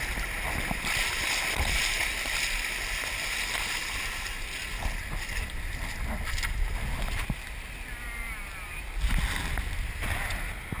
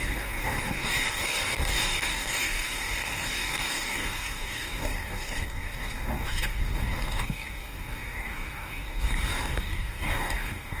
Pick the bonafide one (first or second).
first